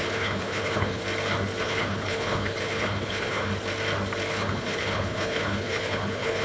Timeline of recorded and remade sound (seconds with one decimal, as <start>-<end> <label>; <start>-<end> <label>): 0.0-1.0 remade; 1.0-1.6 recorded; 1.6-3.5 remade; 3.5-4.3 recorded; 4.3-6.4 remade